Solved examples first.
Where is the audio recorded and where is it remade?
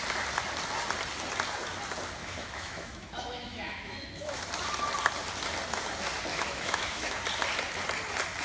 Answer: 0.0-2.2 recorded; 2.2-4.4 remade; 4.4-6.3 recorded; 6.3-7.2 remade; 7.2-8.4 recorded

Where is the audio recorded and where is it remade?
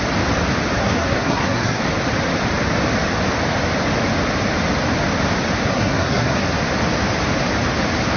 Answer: 0.0-0.8 recorded; 0.8-1.8 remade; 1.8-5.6 recorded; 5.6-6.5 remade; 6.5-8.2 recorded